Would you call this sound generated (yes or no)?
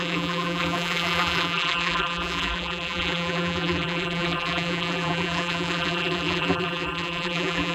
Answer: yes